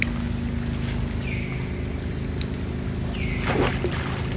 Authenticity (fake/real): real